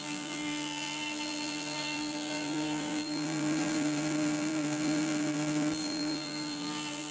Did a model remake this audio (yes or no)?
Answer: yes